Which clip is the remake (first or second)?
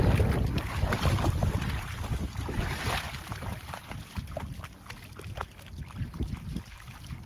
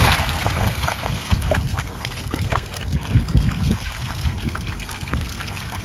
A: second